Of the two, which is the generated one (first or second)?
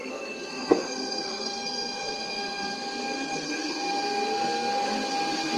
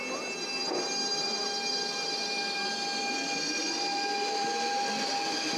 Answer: first